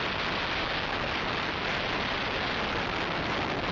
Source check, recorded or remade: recorded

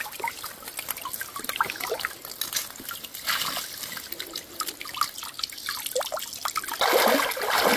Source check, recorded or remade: recorded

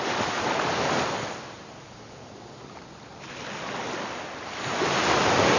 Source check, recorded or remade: recorded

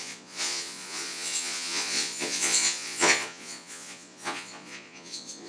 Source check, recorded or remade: remade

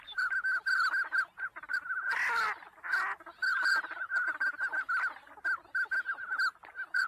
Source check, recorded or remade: recorded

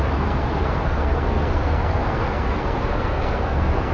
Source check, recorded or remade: remade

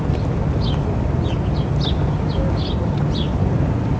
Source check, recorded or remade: recorded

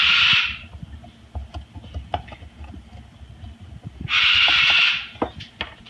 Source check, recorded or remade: recorded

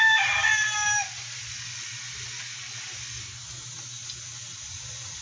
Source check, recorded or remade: recorded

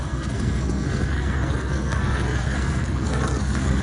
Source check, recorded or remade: remade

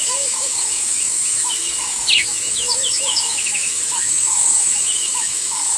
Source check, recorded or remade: remade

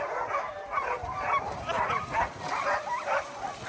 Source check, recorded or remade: recorded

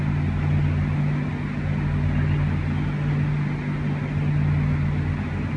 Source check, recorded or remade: recorded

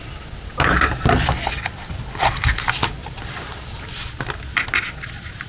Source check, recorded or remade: recorded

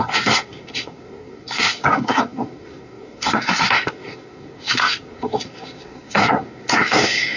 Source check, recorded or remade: remade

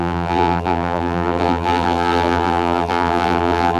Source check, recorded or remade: remade